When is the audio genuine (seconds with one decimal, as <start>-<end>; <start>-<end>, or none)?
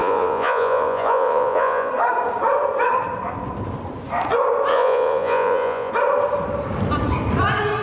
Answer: 1.9-4.7; 5.9-7.8